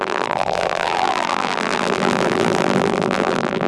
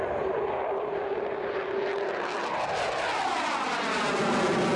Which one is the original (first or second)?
second